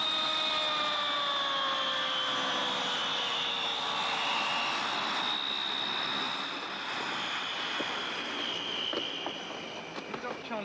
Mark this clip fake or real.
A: real